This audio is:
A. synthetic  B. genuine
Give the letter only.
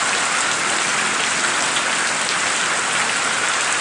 B